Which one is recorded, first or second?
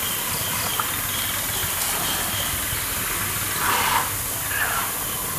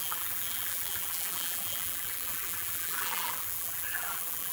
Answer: first